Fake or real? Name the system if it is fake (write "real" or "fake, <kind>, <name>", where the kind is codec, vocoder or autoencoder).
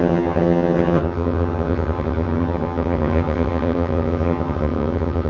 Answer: fake, vocoder, HiFi-GAN